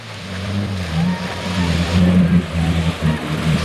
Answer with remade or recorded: remade